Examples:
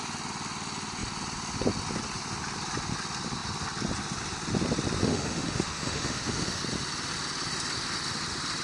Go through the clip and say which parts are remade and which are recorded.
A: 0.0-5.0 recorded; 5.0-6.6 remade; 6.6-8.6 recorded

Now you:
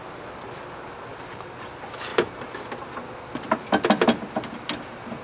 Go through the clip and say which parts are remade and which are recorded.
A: 0.0-1.1 recorded; 1.1-1.7 remade; 1.7-5.2 recorded

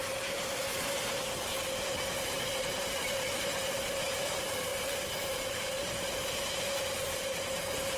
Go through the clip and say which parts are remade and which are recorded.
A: 0.0-4.7 remade; 4.7-5.2 recorded; 5.2-8.0 remade

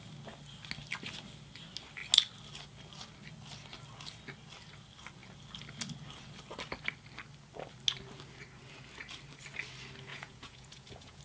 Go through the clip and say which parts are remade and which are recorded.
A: 0.0-10.1 recorded; 10.1-11.2 remade

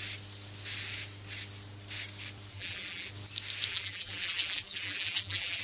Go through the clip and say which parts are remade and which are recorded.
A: 0.0-2.5 recorded; 2.5-3.1 remade; 3.1-3.7 recorded; 3.7-5.6 remade

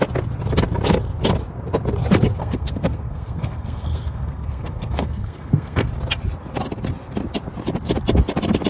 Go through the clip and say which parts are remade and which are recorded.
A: 0.0-2.4 recorded; 2.4-5.9 remade; 5.9-8.7 recorded